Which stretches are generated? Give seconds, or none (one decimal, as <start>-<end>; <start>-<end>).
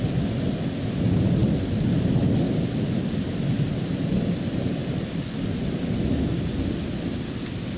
none